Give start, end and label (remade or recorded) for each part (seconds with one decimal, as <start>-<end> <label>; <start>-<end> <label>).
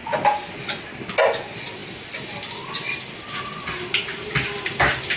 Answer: 0.0-5.2 recorded